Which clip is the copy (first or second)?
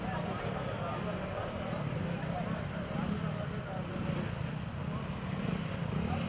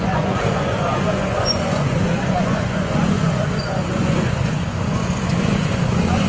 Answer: second